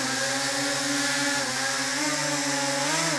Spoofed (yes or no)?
no